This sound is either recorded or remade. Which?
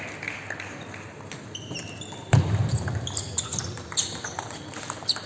recorded